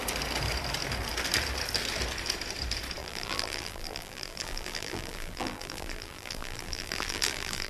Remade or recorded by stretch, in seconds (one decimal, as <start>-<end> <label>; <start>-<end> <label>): 0.0-3.0 recorded; 3.0-7.7 remade